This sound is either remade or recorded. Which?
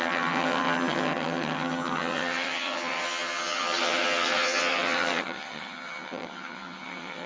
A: remade